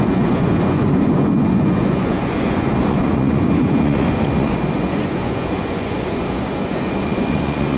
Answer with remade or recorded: remade